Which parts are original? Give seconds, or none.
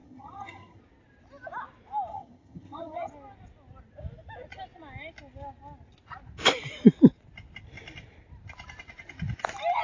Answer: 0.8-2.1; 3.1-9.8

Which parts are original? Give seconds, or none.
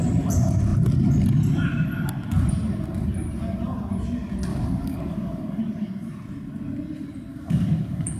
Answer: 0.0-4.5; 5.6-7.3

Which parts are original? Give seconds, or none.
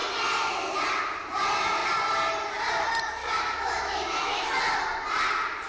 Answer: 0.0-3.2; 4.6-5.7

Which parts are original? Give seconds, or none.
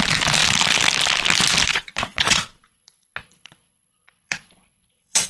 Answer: 0.0-1.7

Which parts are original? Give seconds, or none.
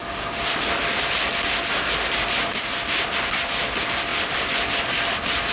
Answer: 0.0-5.5